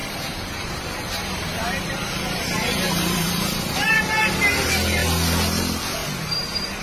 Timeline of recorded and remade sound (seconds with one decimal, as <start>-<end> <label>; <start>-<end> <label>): 0.0-4.1 remade; 4.1-6.8 recorded